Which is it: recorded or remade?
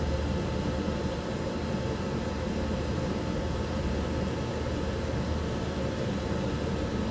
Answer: remade